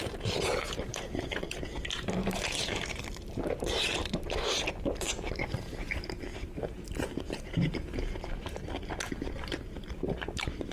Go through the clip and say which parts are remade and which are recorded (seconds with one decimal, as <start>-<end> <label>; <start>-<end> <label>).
0.0-10.7 remade

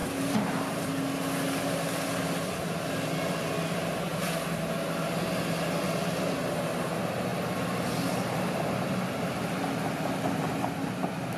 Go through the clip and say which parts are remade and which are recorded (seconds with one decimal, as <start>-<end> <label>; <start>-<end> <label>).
0.0-0.9 remade; 0.9-11.4 recorded

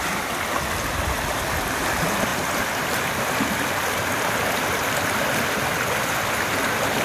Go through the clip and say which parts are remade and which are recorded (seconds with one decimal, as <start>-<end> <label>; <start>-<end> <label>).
0.0-7.0 recorded